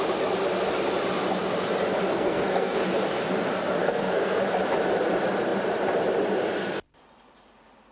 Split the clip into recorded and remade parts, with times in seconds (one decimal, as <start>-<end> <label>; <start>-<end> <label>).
0.0-2.1 recorded; 2.1-2.8 remade; 2.8-3.8 recorded; 3.8-4.4 remade; 4.4-7.9 recorded